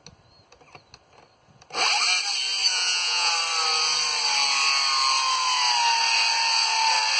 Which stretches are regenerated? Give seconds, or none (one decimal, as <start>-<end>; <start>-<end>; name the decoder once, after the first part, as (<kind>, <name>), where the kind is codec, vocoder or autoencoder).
2.7-3.3 (vocoder, Vocos)